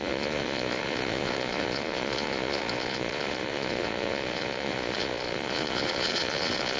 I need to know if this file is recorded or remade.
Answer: remade